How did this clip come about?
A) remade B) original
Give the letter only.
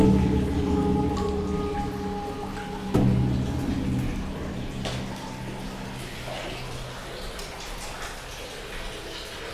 B